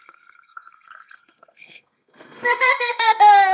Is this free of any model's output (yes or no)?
no